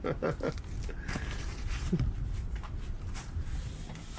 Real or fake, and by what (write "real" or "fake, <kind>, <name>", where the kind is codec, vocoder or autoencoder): real